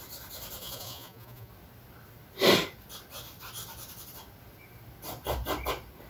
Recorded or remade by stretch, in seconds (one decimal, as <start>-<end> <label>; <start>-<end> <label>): 0.0-0.6 recorded; 0.6-1.5 remade; 1.5-6.1 recorded